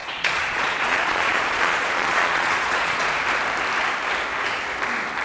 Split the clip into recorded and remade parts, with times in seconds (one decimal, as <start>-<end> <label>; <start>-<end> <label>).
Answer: 0.0-3.1 remade; 3.1-5.2 recorded